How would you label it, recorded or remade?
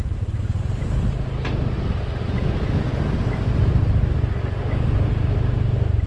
recorded